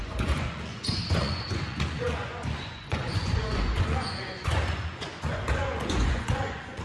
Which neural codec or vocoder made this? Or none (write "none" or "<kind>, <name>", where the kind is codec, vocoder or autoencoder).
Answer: vocoder, Vocos